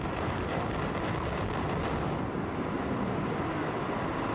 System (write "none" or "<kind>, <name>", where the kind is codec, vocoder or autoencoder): none